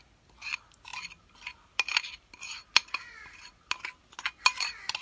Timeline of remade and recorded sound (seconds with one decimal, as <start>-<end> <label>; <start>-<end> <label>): 0.0-5.0 recorded